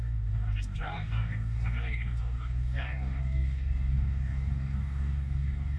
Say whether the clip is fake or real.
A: fake